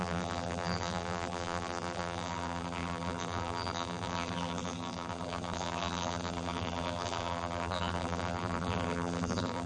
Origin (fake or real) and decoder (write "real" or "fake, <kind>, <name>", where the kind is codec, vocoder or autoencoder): fake, vocoder, BigVGAN v2